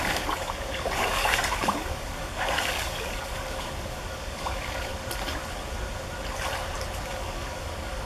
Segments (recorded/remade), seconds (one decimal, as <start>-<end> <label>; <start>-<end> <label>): 0.0-4.9 remade; 4.9-7.2 recorded; 7.2-8.1 remade